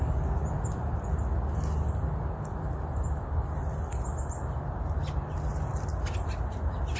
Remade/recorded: recorded